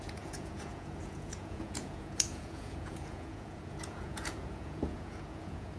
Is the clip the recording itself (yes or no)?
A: no